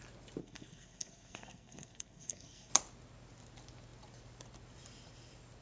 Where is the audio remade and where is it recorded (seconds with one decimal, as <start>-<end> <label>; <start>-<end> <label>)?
0.0-0.4 recorded; 0.4-2.7 remade; 2.7-5.6 recorded